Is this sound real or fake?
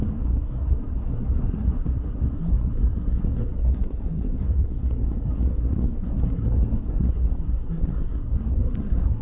fake